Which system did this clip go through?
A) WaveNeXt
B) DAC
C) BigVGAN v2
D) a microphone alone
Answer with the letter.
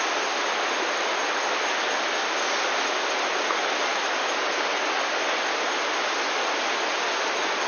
D